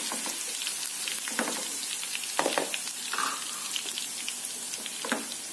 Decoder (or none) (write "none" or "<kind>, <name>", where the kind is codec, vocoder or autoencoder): none